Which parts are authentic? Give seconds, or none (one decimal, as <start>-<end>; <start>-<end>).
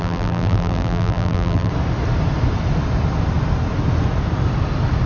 1.7-5.1